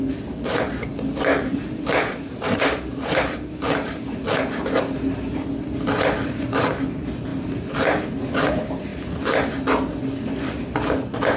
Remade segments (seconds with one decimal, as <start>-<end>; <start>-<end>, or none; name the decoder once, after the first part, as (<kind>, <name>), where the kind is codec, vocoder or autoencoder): 1.3-3.6 (vocoder, BigVGAN v2)